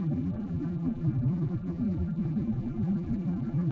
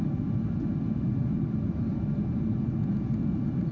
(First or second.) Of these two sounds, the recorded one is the second